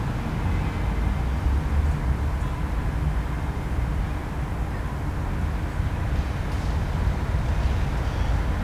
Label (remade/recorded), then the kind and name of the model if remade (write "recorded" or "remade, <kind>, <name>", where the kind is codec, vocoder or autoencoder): recorded